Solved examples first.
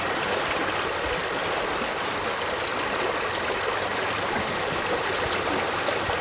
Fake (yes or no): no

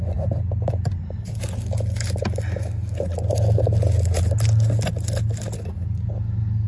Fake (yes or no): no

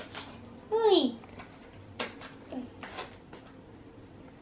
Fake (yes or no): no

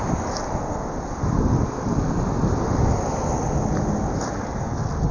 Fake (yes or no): no